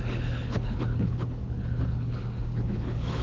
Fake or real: fake